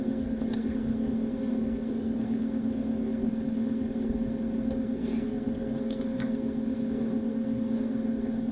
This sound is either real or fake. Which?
fake